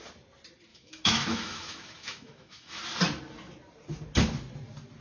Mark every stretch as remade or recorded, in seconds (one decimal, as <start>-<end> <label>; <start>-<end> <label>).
0.0-0.7 recorded; 0.7-2.8 remade; 2.8-5.0 recorded